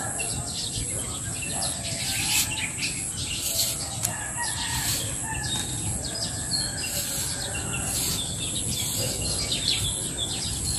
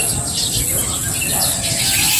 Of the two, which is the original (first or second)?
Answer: first